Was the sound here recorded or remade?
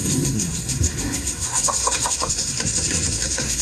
remade